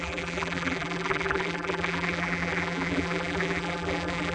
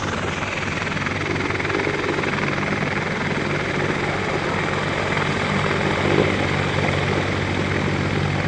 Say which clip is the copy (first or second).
first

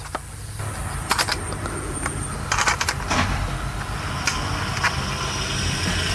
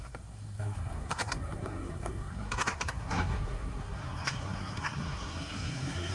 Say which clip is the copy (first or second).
second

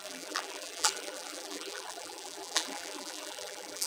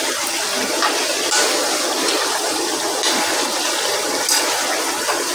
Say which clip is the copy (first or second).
first